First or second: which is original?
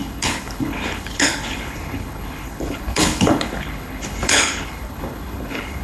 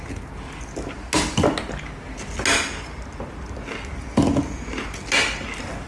second